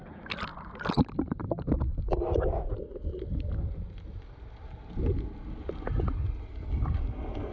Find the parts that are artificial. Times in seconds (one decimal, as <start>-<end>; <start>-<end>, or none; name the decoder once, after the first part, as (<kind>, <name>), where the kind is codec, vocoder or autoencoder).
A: none